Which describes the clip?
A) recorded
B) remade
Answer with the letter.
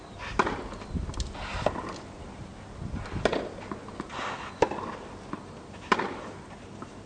A